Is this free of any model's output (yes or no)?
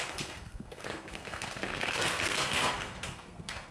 no